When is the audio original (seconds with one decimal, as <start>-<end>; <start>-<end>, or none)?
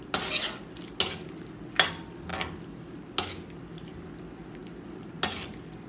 0.0-2.3; 2.9-5.9